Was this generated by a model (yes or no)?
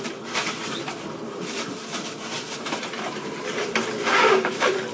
yes